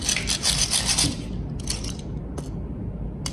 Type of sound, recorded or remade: recorded